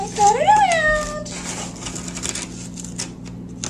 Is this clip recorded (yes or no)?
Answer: yes